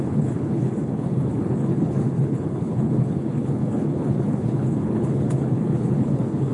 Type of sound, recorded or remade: remade